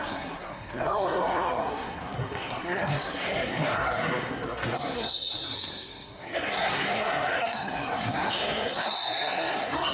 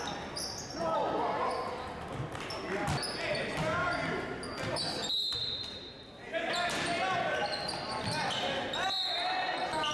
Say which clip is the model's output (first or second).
first